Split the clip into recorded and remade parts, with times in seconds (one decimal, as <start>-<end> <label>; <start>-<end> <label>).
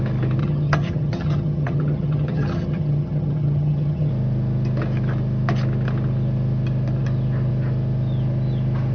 0.0-0.4 recorded; 0.4-4.1 remade; 4.1-8.9 recorded